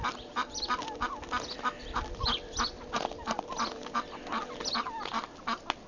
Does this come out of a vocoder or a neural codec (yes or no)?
no